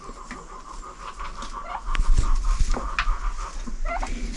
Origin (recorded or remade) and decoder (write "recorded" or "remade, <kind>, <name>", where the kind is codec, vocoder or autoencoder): recorded